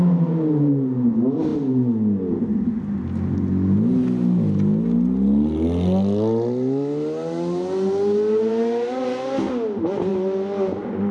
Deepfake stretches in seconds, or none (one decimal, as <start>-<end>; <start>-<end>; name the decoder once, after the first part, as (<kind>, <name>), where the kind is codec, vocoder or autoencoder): none